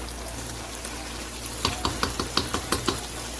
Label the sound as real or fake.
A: real